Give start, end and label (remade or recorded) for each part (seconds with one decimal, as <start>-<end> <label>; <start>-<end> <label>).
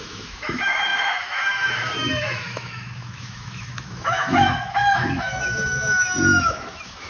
0.0-7.1 remade